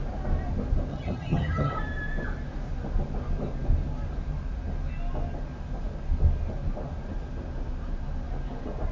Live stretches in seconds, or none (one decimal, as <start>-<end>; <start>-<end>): 0.0-0.9; 1.7-8.9